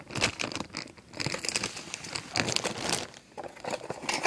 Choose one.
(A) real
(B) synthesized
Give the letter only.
A